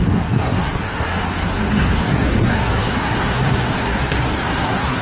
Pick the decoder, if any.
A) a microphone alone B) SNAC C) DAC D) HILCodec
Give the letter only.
B